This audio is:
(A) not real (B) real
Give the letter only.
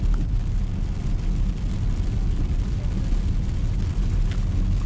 B